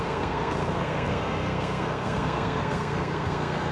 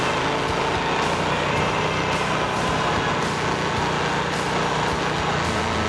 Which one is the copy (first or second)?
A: first